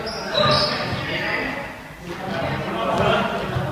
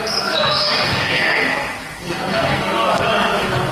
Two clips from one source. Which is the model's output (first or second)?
second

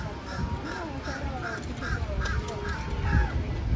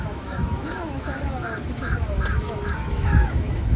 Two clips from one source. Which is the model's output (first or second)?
second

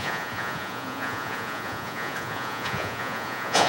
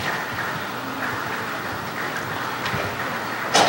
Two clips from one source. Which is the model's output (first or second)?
first